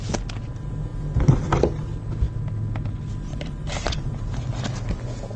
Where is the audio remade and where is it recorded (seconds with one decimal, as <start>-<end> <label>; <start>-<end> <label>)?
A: 0.0-3.3 recorded; 3.3-4.5 remade; 4.5-5.4 recorded